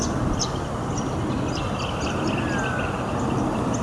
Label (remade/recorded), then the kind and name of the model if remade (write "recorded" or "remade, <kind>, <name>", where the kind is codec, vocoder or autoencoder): recorded